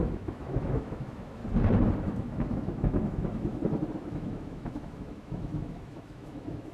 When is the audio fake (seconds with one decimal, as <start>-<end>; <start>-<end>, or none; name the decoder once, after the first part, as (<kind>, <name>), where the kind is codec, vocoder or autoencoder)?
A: 0.0-1.4 (autoencoder, DAC-VAE); 2.0-3.6; 4.1-6.7